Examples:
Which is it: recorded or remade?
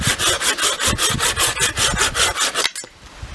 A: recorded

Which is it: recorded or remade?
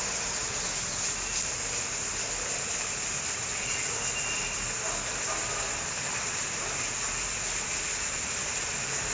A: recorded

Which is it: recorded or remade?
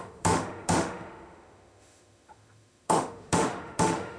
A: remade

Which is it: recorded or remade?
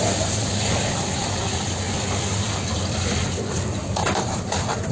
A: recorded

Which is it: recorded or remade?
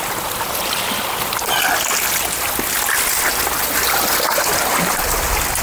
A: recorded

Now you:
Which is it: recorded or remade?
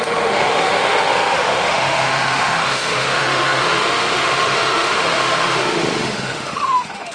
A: remade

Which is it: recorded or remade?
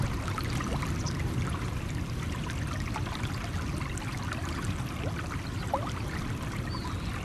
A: recorded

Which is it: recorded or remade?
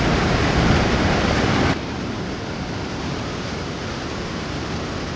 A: remade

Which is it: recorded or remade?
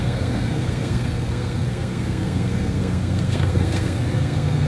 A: remade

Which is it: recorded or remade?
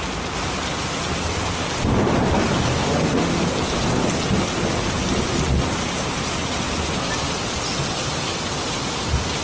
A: recorded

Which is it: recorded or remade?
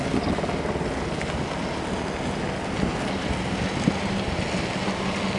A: recorded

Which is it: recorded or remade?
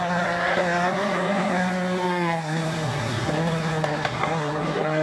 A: remade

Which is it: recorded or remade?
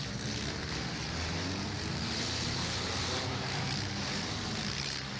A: remade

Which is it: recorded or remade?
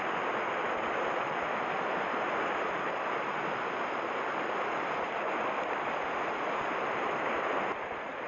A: recorded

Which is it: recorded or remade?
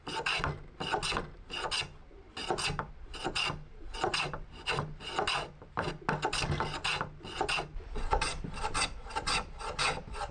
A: recorded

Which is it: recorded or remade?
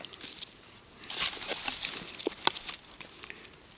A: recorded